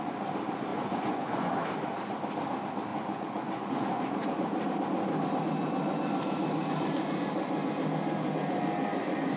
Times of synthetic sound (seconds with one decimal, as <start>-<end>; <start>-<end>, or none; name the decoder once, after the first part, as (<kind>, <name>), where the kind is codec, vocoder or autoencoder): 0.7-1.5 (vocoder, Vocos); 2.9-4.0